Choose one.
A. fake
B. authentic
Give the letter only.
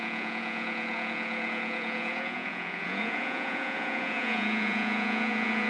A